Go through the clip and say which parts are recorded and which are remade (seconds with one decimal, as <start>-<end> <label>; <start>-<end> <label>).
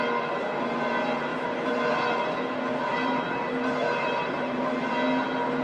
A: 0.0-1.3 recorded; 1.3-2.3 remade; 2.3-2.9 recorded; 2.9-4.6 remade; 4.6-5.6 recorded